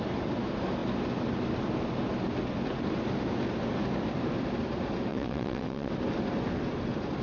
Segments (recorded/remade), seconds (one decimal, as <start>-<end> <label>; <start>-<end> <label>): 0.0-5.1 recorded; 5.1-5.9 remade; 5.9-7.2 recorded